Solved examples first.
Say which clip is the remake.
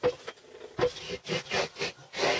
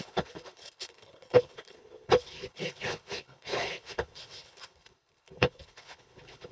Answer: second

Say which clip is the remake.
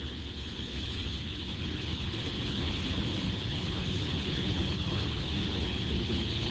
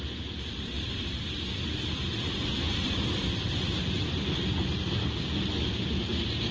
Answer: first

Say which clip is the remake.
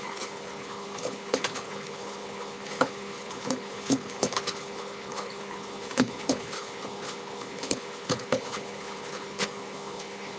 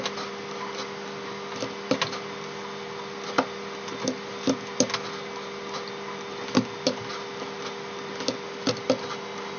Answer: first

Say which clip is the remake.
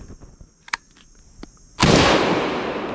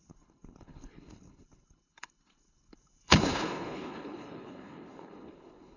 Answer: second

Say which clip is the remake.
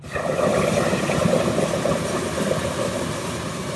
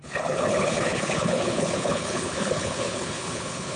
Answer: second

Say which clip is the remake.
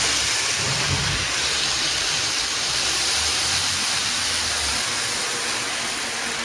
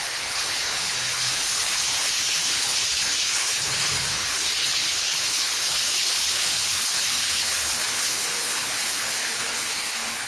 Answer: second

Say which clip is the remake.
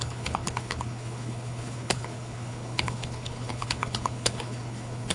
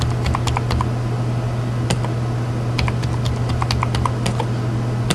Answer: first